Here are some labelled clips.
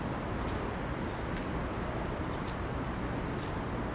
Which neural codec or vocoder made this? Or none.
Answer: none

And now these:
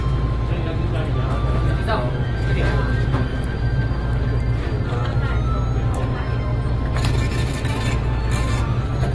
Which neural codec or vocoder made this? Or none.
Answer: none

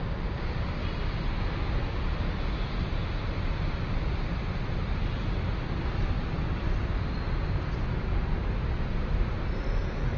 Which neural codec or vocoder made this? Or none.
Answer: none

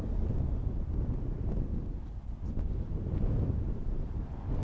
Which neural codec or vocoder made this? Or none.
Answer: none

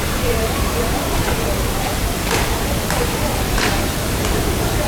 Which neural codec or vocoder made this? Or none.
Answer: vocoder, BigVGAN v2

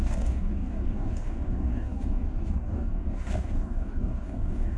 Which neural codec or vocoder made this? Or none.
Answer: codec, DAC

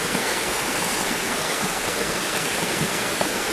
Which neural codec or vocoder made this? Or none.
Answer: codec, SNAC